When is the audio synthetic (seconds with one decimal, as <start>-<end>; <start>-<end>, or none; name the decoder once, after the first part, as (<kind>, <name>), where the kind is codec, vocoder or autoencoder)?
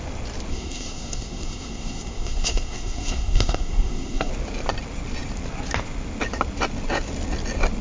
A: 0.5-4.3 (codec, SNAC)